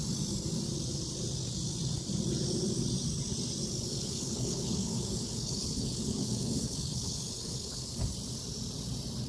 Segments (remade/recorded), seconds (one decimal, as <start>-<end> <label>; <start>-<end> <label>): 0.0-3.9 recorded; 3.9-8.0 remade; 8.0-9.3 recorded